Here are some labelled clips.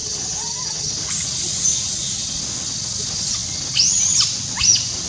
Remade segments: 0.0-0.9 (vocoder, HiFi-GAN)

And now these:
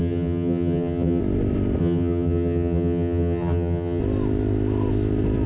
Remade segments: 0.0-1.2 (vocoder, HiFi-GAN); 1.8-4.0

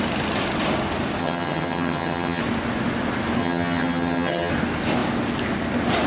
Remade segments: 1.2-2.4 (vocoder, HiFi-GAN); 3.4-4.5

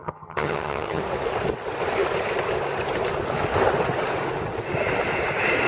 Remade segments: 0.0-1.0 (vocoder, HiFi-GAN)

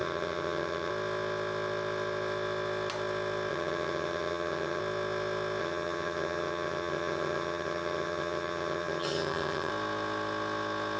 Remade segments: 0.0-0.9 (vocoder, HiFi-GAN); 3.5-4.8; 5.6-9.7